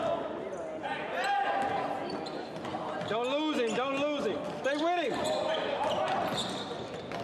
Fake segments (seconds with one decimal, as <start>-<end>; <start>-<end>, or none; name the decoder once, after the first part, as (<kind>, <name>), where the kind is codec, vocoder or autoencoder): none